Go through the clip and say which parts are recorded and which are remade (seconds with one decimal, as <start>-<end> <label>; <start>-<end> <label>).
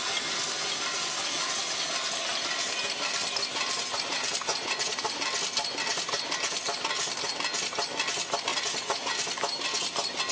0.0-4.5 recorded; 4.5-5.1 remade; 5.1-8.5 recorded; 8.5-9.1 remade; 9.1-10.3 recorded